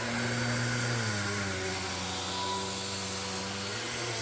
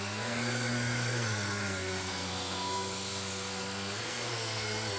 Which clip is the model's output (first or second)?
second